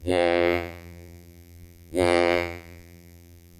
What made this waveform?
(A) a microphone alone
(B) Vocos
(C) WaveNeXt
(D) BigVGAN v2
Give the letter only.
D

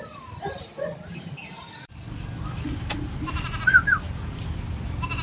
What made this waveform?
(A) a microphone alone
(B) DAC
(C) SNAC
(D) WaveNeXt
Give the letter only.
A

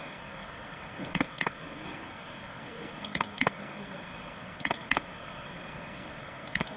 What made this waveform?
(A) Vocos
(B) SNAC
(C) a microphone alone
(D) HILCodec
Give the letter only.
B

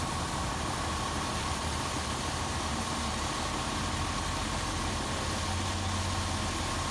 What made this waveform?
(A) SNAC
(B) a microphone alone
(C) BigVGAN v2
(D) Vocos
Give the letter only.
B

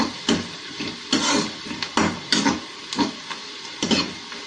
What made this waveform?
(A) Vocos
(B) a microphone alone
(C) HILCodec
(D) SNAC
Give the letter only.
B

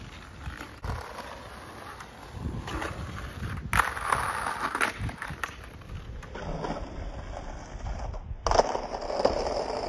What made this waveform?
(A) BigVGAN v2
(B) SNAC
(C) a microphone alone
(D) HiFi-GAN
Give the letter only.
C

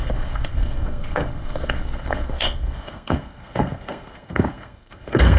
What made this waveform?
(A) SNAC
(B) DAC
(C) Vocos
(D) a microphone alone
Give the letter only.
A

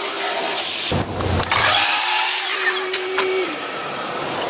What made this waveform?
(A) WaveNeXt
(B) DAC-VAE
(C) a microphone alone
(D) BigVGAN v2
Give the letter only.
D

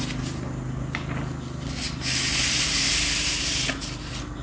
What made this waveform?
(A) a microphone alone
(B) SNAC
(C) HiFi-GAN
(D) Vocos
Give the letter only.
A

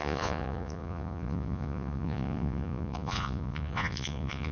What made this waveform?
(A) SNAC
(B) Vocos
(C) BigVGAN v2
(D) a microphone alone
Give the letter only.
B